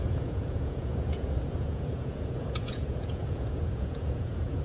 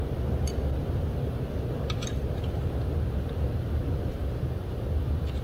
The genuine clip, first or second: second